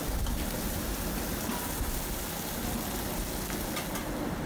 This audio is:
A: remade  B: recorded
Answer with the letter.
B